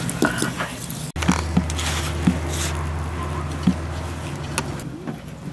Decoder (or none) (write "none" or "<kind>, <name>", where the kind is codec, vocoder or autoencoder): none